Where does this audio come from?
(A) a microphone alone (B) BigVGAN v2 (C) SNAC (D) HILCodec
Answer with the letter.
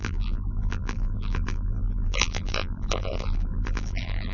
B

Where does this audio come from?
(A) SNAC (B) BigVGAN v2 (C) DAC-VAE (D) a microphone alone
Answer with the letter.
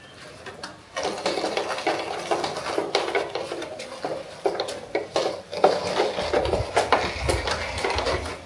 D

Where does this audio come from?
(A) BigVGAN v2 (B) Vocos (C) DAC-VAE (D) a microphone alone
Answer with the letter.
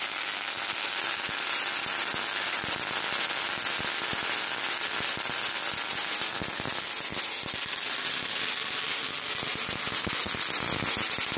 D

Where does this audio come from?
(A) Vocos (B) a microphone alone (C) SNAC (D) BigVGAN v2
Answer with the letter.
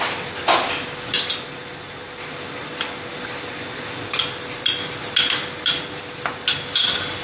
B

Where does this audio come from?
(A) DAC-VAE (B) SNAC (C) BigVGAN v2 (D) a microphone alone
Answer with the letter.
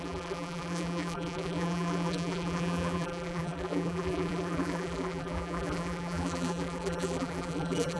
C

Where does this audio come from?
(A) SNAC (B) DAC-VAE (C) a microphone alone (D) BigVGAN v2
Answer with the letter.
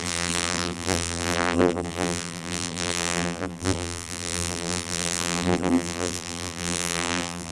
D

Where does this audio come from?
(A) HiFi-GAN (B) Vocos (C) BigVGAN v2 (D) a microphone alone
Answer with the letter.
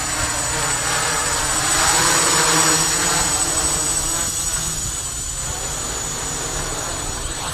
C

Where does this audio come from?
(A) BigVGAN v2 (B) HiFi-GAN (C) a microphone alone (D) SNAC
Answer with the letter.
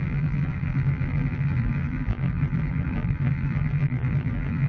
A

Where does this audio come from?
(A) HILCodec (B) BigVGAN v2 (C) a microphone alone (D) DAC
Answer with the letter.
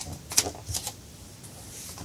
C